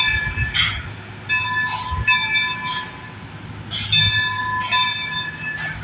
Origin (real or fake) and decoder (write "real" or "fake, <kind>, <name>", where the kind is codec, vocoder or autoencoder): real